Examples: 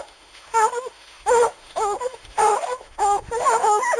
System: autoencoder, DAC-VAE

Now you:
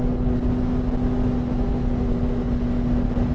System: none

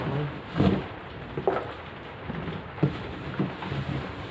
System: none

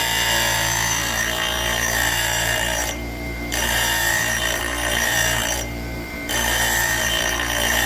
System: vocoder, BigVGAN v2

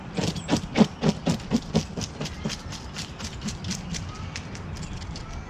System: none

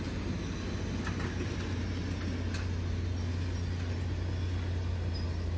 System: none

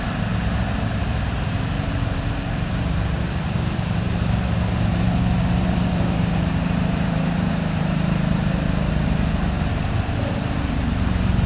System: vocoder, BigVGAN v2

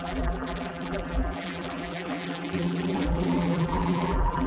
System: vocoder, BigVGAN v2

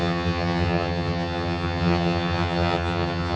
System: vocoder, HiFi-GAN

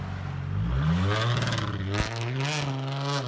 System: none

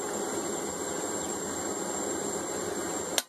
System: none